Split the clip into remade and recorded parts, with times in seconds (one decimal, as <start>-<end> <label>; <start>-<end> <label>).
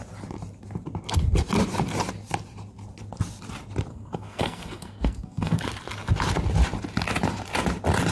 0.0-3.9 recorded; 3.9-5.6 remade; 5.6-8.1 recorded